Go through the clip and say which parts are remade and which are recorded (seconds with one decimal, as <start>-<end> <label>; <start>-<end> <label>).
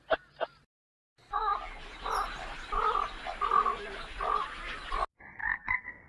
0.0-5.4 recorded; 5.4-6.1 remade